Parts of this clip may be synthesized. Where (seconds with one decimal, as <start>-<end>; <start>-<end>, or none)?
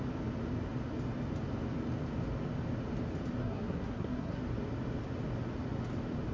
3.4-4.4